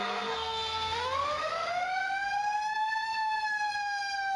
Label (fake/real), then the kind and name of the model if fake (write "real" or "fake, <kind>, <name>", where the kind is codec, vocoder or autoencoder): fake, codec, SNAC